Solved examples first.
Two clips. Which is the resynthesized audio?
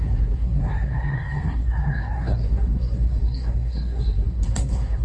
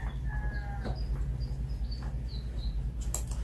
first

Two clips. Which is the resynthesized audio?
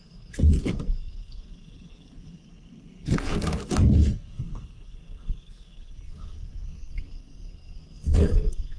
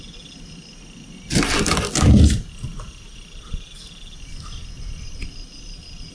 first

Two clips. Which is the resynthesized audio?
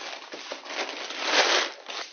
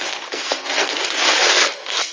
second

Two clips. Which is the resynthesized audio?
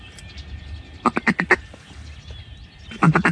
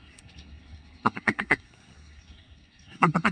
second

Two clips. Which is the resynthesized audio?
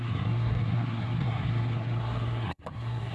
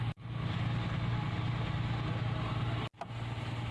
first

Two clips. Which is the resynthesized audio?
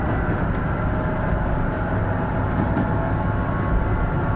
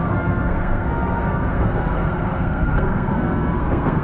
second